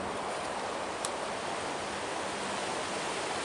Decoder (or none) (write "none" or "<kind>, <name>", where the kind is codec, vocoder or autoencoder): none